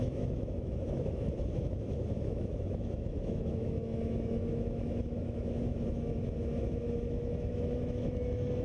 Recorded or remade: remade